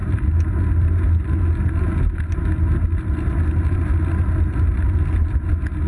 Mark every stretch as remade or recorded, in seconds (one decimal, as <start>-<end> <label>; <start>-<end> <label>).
0.0-5.9 recorded